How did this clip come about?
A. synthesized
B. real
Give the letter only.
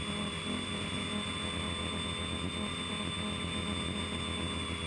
B